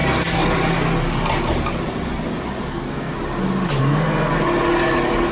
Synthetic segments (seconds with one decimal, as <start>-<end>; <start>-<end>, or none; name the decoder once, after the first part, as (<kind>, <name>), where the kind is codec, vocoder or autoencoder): 2.7-3.1 (codec, SNAC); 3.8-4.3